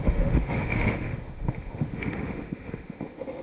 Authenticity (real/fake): fake